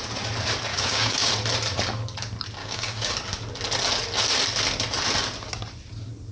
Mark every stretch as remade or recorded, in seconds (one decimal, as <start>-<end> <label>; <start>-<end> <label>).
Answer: 0.0-0.7 recorded; 0.7-1.3 remade; 1.3-2.6 recorded; 2.6-3.1 remade; 3.1-6.3 recorded